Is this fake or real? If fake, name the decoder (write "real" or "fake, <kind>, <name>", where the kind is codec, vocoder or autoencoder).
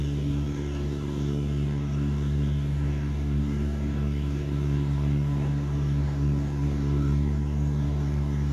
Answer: fake, codec, DAC